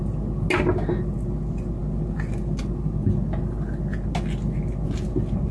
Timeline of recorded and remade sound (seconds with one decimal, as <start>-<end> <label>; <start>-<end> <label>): 0.0-5.5 recorded